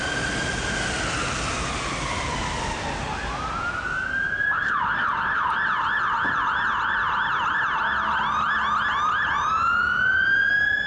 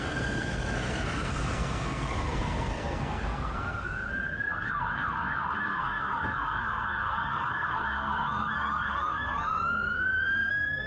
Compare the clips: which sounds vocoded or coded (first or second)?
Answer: second